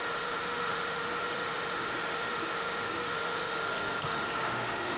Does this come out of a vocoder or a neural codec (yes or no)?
yes